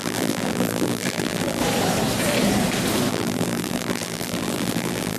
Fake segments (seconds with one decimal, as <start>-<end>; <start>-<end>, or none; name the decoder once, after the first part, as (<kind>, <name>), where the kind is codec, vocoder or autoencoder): 0.0-1.6 (vocoder, BigVGAN v2); 3.1-5.2